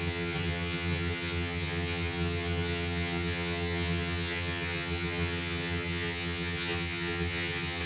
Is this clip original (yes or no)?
no